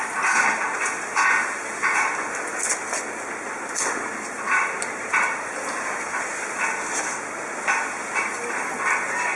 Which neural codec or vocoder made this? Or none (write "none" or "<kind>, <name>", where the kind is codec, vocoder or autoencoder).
none